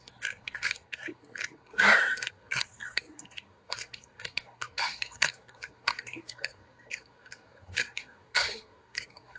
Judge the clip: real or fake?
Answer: fake